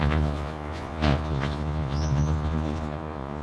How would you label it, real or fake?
fake